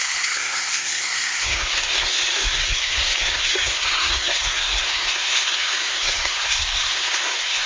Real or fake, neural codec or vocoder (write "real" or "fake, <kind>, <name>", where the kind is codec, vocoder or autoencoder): fake, codec, SNAC